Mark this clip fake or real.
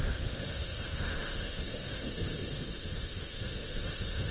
fake